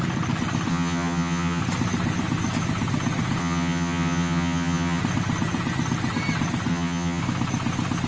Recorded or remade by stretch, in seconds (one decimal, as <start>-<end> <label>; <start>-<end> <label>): 0.0-0.7 recorded; 0.7-1.6 remade; 1.6-3.4 recorded; 3.4-5.0 remade; 5.0-6.7 recorded; 6.7-7.2 remade; 7.2-8.1 recorded